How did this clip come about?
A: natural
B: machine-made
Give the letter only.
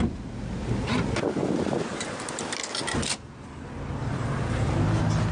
A